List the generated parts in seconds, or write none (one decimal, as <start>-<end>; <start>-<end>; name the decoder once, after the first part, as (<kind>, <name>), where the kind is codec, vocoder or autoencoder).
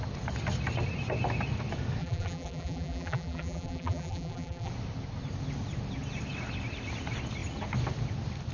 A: 2.0-4.7 (vocoder, BigVGAN v2)